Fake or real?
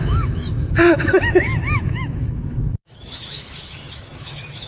fake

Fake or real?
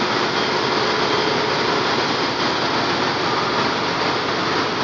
real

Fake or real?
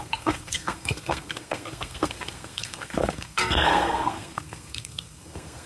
fake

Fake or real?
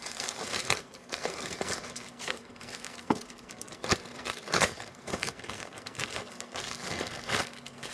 fake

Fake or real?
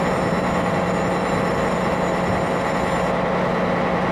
real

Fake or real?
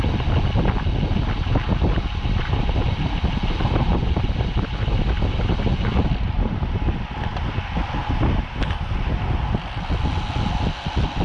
real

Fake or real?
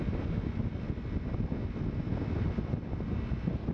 real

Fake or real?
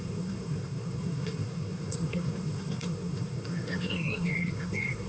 fake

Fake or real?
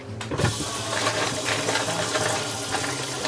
real